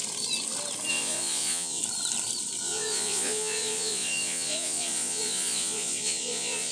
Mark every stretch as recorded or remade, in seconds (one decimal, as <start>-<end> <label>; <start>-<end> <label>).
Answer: 0.0-0.9 recorded; 0.9-1.8 remade; 1.8-2.6 recorded; 2.6-6.7 remade